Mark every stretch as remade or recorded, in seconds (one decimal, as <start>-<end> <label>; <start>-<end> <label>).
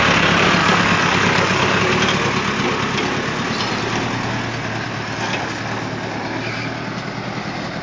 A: 0.0-0.6 recorded; 0.6-1.8 remade; 1.8-7.8 recorded